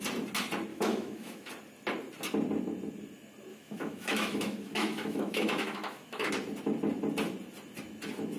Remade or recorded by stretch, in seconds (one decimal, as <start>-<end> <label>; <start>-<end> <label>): 0.0-0.7 recorded; 0.7-1.5 remade; 1.5-3.5 recorded; 3.5-6.3 remade; 6.3-8.4 recorded